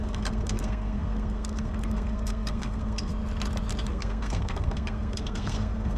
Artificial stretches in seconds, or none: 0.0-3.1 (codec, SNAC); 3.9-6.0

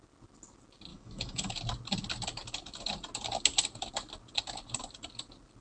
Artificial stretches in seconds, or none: 0.9-1.5 (autoencoder, DAC-VAE)

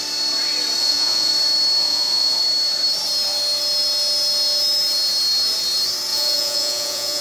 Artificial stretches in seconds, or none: 0.8-1.3 (vocoder, Vocos); 1.8-2.4; 6.1-7.2

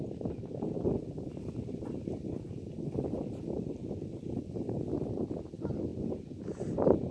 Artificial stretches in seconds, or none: none